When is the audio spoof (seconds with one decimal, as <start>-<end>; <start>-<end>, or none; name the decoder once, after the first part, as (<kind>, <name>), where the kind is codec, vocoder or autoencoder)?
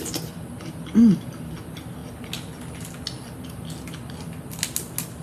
none